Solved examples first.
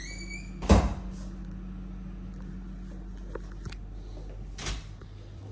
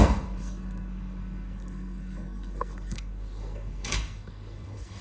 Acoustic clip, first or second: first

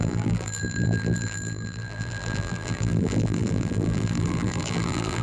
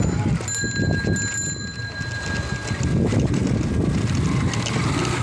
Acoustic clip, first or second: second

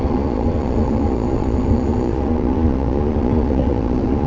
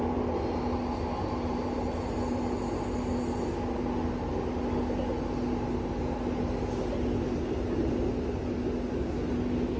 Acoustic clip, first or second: second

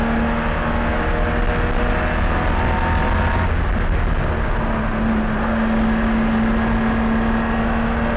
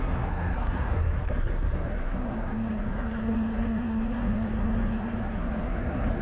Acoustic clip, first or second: first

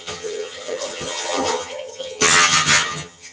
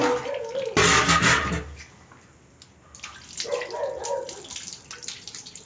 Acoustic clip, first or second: second